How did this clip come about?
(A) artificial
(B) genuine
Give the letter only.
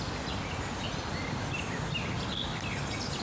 B